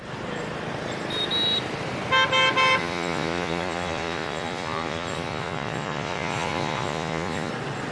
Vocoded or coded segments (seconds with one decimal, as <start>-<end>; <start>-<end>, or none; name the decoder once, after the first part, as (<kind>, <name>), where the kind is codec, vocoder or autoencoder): 2.8-7.5 (vocoder, Vocos)

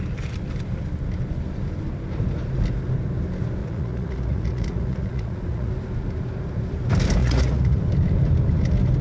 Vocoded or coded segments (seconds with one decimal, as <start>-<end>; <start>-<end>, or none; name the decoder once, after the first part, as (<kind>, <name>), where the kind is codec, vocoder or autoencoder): 3.6-5.7 (vocoder, Vocos); 7.2-7.8

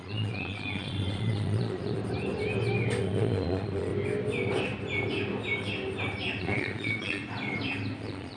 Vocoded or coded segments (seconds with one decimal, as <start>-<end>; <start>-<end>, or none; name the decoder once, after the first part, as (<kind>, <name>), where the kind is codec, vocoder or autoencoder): 0.0-2.0 (vocoder, Vocos); 3.0-3.9; 6.4-7.2; 8.0-8.4